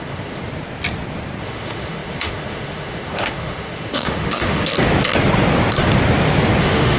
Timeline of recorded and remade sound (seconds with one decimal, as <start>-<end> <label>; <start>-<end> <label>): 0.0-0.4 remade; 0.4-1.4 recorded; 1.4-4.7 remade; 4.7-6.6 recorded; 6.6-7.0 remade